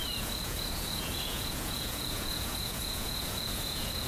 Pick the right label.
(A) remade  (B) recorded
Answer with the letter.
A